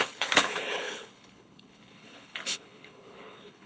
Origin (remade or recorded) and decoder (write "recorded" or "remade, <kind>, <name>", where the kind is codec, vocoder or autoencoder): remade, codec, HILCodec